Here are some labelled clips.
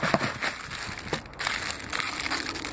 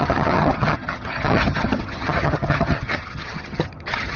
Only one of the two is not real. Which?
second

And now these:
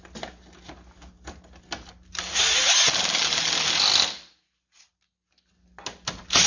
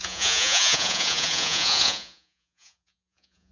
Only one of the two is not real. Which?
second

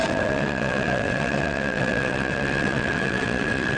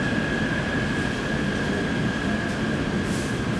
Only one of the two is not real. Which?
first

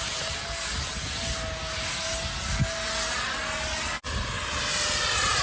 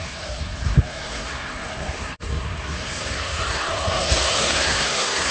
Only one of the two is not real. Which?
second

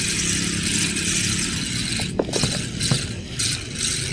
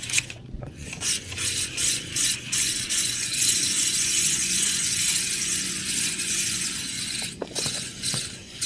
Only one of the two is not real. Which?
second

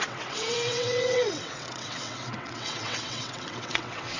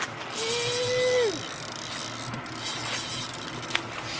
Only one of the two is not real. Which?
first